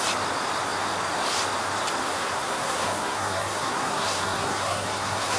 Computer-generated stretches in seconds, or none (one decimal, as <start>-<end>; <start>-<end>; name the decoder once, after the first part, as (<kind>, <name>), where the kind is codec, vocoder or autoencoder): 2.0-5.4 (codec, SNAC)